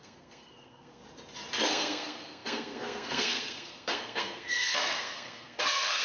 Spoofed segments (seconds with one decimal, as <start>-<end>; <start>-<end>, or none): 0.0-1.0; 1.7-6.0